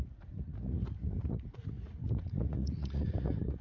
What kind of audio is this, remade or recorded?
remade